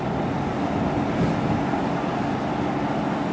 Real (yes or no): yes